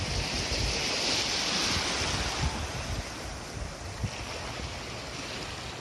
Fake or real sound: real